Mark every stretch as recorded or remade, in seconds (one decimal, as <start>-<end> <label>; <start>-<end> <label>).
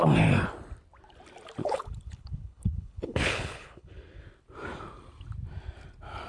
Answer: 0.0-1.6 recorded; 1.6-4.2 remade; 4.2-6.3 recorded